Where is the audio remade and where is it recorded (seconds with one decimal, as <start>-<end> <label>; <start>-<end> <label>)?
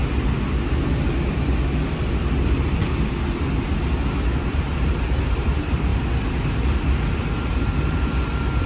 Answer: 0.0-4.4 recorded; 4.4-5.9 remade; 5.9-7.5 recorded; 7.5-8.7 remade